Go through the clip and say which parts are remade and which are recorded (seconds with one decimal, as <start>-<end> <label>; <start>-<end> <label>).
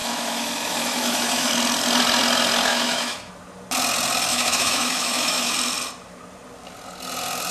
0.0-1.5 remade; 1.5-2.7 recorded; 2.7-3.3 remade; 3.3-4.3 recorded; 4.3-5.5 remade; 5.5-7.5 recorded